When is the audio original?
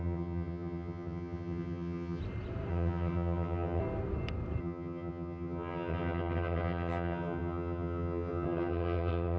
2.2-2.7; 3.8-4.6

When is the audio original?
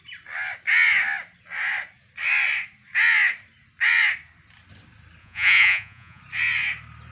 0.0-5.2; 6.2-7.1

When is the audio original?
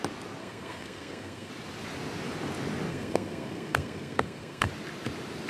0.0-0.4; 1.5-2.9; 4.7-5.5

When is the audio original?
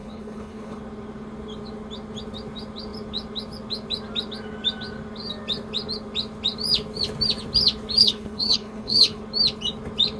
0.8-8.0; 9.2-10.2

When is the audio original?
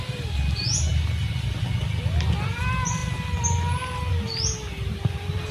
0.0-5.5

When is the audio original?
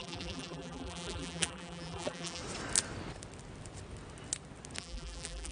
2.4-4.8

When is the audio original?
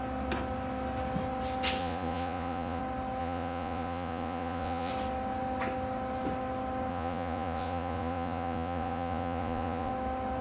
0.0-1.8; 2.8-3.2; 4.9-6.9; 9.9-10.4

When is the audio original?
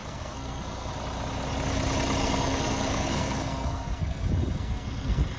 0.9-2.2